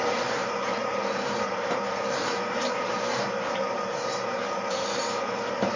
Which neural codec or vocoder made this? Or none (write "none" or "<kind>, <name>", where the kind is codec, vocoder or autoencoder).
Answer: vocoder, BigVGAN v2